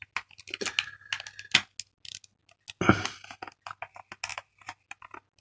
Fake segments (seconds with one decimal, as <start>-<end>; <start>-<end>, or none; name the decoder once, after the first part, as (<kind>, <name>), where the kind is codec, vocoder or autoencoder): none